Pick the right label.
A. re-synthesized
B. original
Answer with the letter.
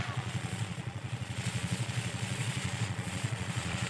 A